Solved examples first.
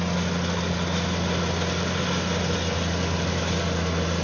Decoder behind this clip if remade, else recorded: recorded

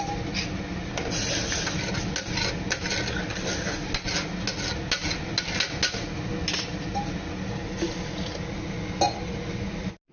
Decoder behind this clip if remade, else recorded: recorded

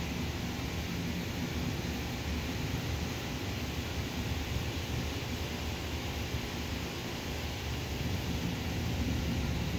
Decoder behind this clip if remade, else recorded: recorded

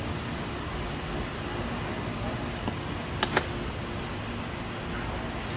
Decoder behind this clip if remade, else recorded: recorded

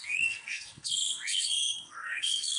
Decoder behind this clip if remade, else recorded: remade, codec, SNAC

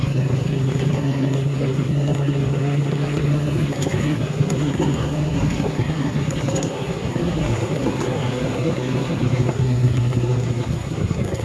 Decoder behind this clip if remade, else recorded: remade, codec, SNAC